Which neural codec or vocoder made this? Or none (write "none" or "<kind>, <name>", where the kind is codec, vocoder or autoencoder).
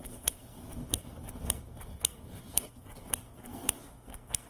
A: codec, SNAC